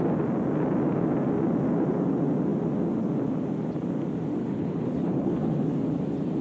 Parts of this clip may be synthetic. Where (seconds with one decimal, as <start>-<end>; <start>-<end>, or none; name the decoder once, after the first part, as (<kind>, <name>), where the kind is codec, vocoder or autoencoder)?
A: 4.4-5.8 (codec, HILCodec)